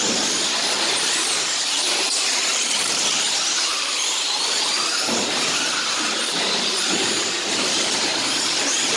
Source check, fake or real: fake